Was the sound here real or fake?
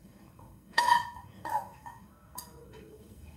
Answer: fake